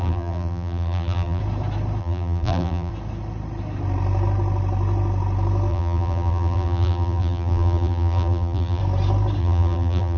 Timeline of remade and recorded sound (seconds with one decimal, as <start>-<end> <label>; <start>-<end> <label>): 0.0-1.4 remade; 1.4-2.0 recorded; 2.0-2.9 remade; 2.9-5.7 recorded; 5.7-8.8 remade; 8.8-9.4 recorded; 9.4-10.2 remade